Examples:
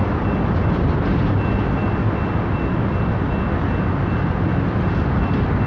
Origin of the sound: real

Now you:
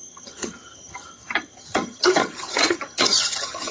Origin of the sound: fake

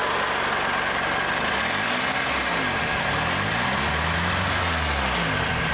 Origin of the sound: real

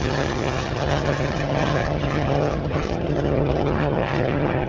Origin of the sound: fake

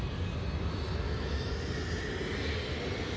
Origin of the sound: real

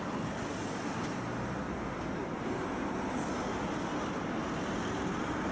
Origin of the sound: real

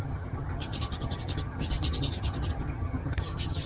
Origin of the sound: fake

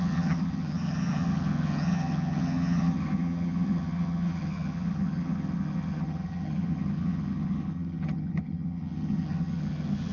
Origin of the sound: fake